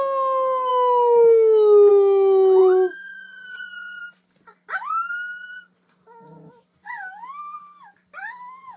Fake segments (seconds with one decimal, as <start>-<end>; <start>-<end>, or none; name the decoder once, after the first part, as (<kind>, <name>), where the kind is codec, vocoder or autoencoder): 2.6-4.0 (vocoder, Vocos)

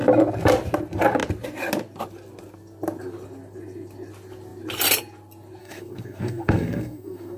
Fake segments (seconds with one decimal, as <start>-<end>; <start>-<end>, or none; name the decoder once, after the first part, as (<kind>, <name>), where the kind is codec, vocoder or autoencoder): 5.6-7.4 (codec, SNAC)

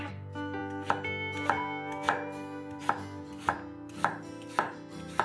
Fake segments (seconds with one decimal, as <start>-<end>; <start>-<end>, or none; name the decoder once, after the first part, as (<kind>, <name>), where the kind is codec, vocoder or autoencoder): none

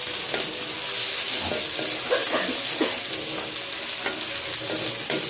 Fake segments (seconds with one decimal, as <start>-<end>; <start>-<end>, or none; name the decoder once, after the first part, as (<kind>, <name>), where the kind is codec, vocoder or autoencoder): none

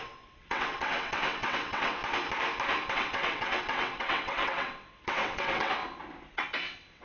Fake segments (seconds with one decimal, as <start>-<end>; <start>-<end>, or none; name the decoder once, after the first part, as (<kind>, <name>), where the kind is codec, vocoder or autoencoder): 0.0-2.0 (vocoder, WaveNeXt); 2.9-5.7; 6.3-7.0